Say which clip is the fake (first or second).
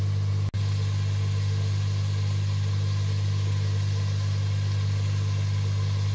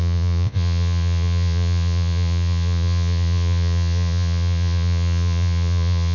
second